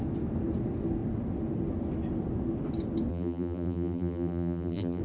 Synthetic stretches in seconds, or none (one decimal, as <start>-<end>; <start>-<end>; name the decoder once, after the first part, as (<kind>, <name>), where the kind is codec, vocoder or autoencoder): 3.1-5.0 (vocoder, BigVGAN v2)